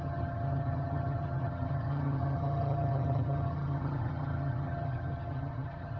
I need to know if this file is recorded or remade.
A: remade